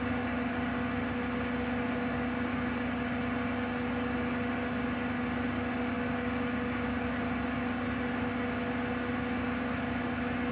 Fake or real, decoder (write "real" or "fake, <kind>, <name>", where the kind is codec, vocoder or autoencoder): real